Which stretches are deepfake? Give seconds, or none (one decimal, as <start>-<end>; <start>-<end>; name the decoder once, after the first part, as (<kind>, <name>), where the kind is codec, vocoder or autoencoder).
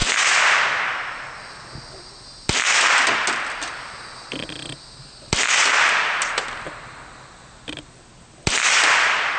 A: none